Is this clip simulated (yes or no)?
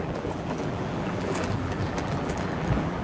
yes